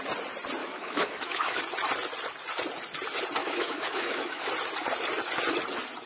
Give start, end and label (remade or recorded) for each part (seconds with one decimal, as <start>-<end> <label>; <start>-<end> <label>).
0.0-0.6 recorded; 0.6-1.6 remade; 1.6-3.4 recorded; 3.4-4.5 remade; 4.5-6.1 recorded